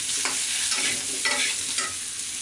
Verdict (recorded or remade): recorded